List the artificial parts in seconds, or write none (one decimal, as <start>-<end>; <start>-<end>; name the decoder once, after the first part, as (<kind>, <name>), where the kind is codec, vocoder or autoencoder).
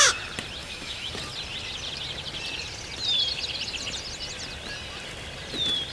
0.6-1.1 (autoencoder, DAC-VAE)